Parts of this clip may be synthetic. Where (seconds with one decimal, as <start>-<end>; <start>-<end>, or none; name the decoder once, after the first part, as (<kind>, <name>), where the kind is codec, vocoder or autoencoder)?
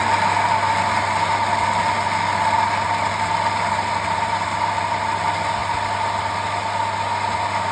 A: none